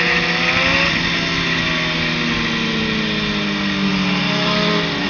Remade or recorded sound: recorded